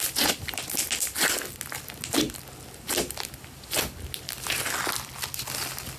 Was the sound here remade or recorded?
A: recorded